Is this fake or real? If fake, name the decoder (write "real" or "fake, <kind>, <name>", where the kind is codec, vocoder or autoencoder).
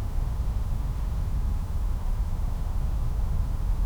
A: fake, autoencoder, DAC-VAE